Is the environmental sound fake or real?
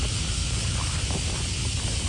real